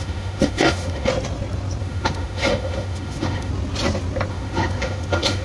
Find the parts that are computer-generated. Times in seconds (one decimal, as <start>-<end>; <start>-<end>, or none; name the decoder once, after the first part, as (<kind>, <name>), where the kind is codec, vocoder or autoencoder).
0.0-1.1 (autoencoder, DAC-VAE); 1.8-3.5; 4.3-5.4